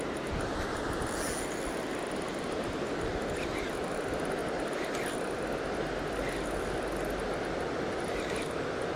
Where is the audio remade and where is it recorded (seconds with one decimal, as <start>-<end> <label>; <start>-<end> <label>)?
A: 0.0-9.0 recorded